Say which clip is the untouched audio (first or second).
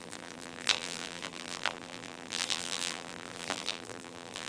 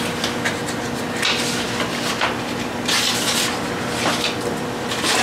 second